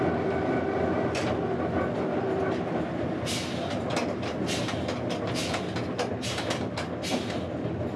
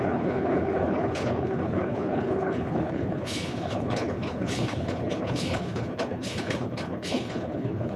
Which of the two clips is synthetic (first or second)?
second